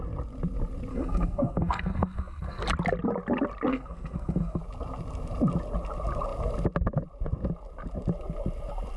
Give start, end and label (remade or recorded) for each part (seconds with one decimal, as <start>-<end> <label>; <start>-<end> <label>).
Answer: 0.0-0.9 recorded; 0.9-2.6 remade; 2.6-3.7 recorded; 3.7-4.6 remade; 4.6-9.0 recorded